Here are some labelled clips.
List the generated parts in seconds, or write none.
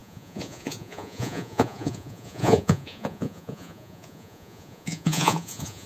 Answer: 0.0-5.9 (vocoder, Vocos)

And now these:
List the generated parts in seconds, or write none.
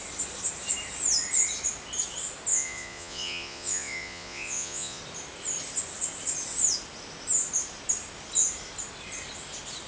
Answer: 2.5-5.0 (vocoder, Vocos)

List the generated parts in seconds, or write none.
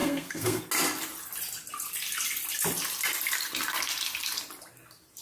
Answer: 0.0-0.6 (codec, SNAC)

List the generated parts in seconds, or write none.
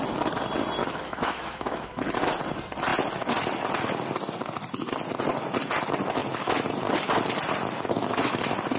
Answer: 0.8-2.0 (autoencoder, DAC-VAE)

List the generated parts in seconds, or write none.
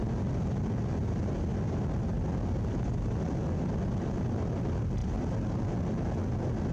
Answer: none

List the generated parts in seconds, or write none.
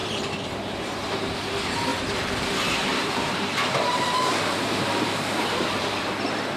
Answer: 0.0-1.4 (vocoder, BigVGAN v2); 1.9-5.9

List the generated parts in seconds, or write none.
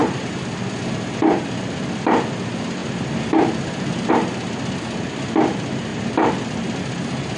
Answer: none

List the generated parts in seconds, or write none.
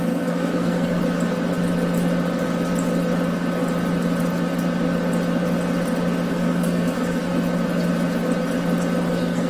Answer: 0.0-1.0 (codec, SNAC); 6.3-7.3; 9.1-9.5